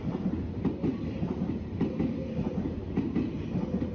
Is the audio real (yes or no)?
yes